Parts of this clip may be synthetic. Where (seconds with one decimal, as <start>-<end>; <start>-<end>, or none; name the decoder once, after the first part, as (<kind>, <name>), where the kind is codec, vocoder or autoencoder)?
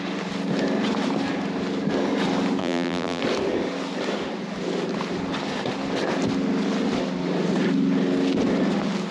2.6-3.2 (vocoder, BigVGAN v2)